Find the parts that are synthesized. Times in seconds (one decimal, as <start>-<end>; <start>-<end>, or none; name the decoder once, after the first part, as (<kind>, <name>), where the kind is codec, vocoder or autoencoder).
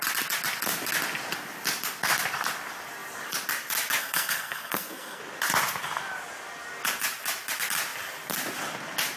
4.0-5.2 (codec, SNAC)